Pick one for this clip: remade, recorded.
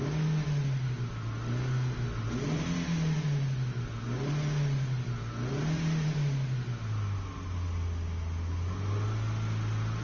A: recorded